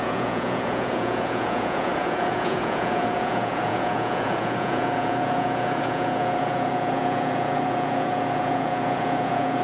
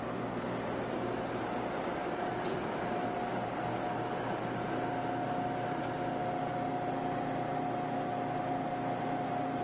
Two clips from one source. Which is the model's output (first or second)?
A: first